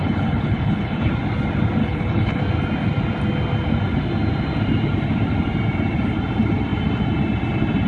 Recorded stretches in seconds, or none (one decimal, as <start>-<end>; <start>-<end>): 1.1-1.8; 2.4-7.9